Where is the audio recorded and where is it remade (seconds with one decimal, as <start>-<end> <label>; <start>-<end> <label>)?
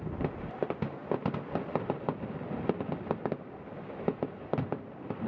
0.0-5.3 recorded